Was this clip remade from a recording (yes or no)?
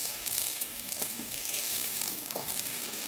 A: yes